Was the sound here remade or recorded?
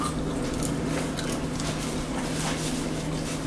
recorded